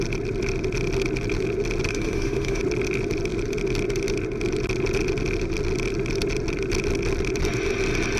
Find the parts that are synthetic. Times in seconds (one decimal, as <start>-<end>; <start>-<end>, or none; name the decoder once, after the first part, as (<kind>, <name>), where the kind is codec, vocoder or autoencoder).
1.9-2.6 (autoencoder, DAC-VAE)